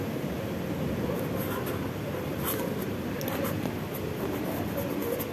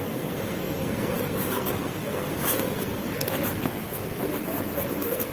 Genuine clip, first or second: first